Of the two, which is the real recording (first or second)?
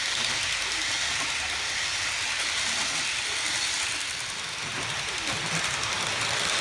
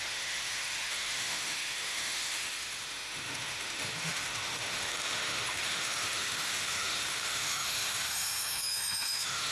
first